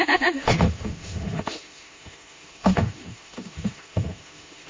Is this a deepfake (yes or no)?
yes